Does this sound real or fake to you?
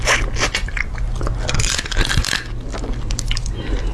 real